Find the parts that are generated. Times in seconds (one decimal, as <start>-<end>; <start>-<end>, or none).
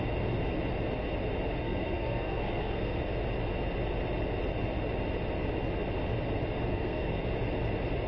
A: 1.6-3.0; 6.7-7.2